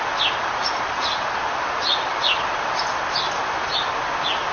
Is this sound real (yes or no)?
yes